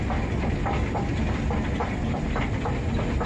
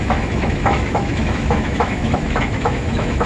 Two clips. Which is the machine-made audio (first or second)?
second